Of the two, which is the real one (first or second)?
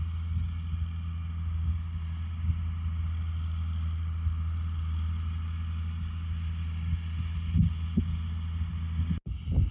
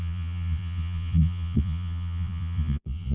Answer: first